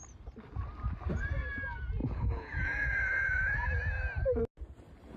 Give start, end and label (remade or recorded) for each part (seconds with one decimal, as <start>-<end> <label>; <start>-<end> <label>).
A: 0.0-2.0 recorded; 2.0-3.8 remade; 3.8-5.2 recorded